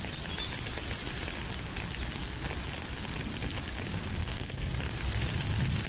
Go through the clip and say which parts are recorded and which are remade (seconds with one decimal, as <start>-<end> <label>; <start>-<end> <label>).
0.0-4.2 recorded; 4.2-4.7 remade; 4.7-5.9 recorded